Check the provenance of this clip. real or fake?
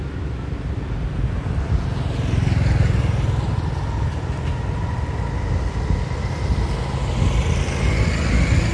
real